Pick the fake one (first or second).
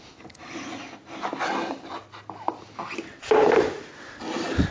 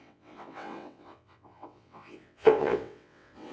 second